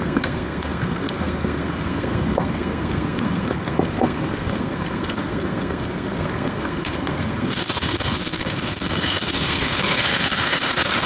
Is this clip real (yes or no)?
no